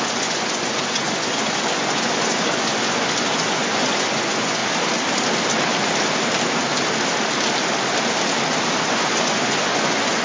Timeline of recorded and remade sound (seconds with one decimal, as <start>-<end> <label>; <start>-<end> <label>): 0.0-4.6 remade; 4.6-8.9 recorded; 8.9-10.2 remade

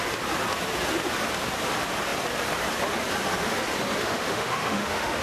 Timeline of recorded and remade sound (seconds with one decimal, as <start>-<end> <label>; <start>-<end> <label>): 0.0-4.0 recorded; 4.0-5.2 remade

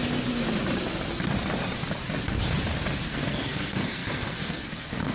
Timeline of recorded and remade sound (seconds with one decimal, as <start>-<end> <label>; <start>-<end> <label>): 0.0-3.1 recorded; 3.1-5.1 remade

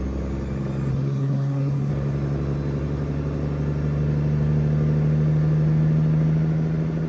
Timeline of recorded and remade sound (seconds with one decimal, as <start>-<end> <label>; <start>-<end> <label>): 0.0-0.9 recorded; 0.9-1.9 remade; 1.9-7.1 recorded

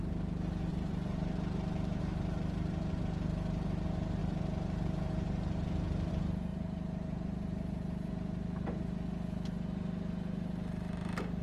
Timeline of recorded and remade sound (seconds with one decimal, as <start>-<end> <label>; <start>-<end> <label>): 0.0-0.7 recorded; 0.7-3.0 remade; 3.0-4.2 recorded; 4.2-6.1 remade; 6.1-6.5 recorded; 6.5-8.1 remade; 8.1-11.4 recorded

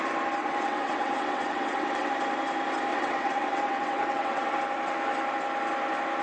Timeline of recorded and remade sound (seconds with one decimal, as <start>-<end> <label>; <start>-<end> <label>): 0.0-0.4 recorded; 0.4-2.1 remade; 2.1-2.9 recorded; 2.9-4.6 remade; 4.6-6.2 recorded

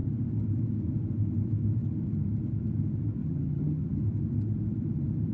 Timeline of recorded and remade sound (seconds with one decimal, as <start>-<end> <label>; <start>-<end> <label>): 0.0-3.2 recorded; 3.2-4.0 remade; 4.0-5.3 recorded